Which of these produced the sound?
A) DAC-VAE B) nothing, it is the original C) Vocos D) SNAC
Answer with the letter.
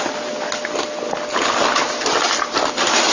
B